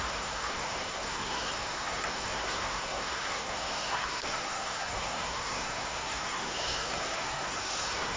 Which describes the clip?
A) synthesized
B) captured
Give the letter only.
A